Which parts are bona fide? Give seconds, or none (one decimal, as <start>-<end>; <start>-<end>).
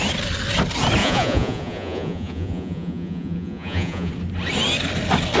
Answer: 0.0-1.0; 4.1-5.4